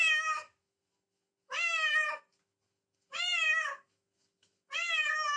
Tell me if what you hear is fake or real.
fake